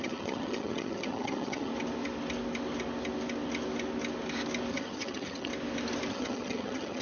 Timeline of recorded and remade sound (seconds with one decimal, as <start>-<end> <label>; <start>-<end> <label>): 0.0-1.7 remade; 1.7-4.7 recorded; 4.7-5.5 remade; 5.5-6.1 recorded; 6.1-7.0 remade

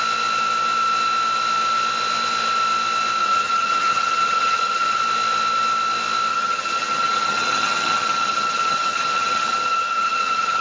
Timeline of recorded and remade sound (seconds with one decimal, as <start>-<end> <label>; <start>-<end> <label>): 0.0-3.2 recorded; 3.2-5.0 remade; 5.0-6.3 recorded; 6.3-10.6 remade